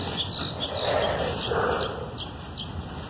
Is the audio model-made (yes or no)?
no